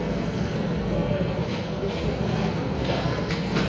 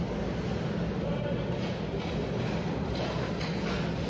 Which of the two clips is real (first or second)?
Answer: second